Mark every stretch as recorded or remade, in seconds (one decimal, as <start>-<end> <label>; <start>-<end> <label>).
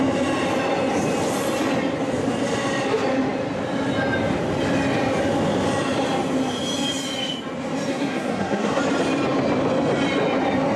0.0-7.9 recorded; 7.9-8.8 remade; 8.8-10.8 recorded